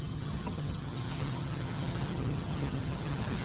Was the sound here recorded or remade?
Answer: remade